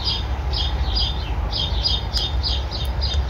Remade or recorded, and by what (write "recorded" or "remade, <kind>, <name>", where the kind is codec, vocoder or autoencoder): recorded